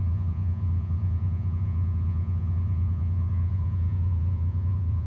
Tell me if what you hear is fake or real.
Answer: fake